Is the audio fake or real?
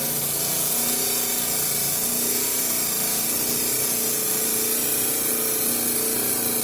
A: real